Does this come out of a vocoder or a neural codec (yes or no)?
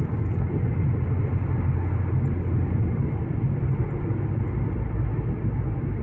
no